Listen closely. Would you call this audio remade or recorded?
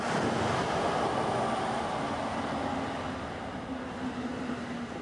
recorded